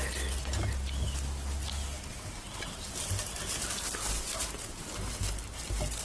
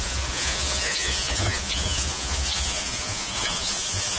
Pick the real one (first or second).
first